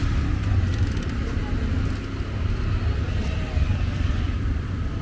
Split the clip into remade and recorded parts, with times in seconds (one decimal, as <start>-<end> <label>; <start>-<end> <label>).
0.0-5.0 recorded